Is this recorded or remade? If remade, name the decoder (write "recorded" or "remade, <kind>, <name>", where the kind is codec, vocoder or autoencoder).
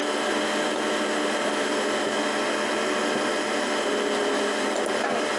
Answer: recorded